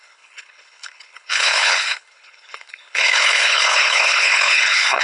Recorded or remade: remade